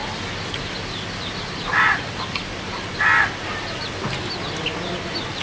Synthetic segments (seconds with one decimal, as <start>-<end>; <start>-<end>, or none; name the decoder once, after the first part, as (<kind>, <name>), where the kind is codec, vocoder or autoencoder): none